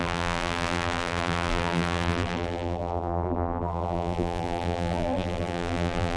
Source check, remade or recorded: remade